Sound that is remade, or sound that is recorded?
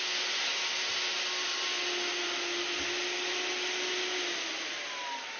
recorded